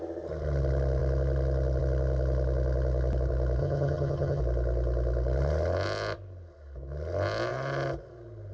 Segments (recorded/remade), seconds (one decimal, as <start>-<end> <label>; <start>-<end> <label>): 0.0-3.6 recorded; 3.6-4.4 remade; 4.4-8.5 recorded